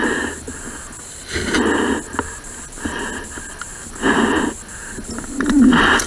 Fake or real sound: real